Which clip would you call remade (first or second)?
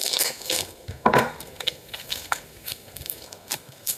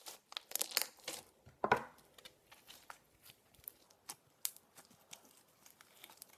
first